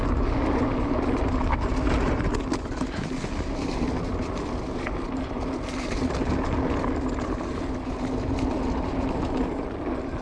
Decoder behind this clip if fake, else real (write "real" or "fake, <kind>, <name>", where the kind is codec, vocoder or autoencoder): real